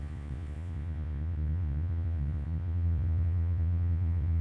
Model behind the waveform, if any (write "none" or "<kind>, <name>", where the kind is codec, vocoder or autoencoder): vocoder, Vocos